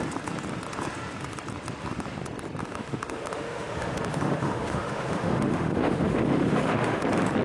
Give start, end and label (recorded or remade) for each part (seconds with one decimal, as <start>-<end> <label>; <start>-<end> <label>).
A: 0.0-2.6 recorded; 2.6-7.0 remade; 7.0-7.4 recorded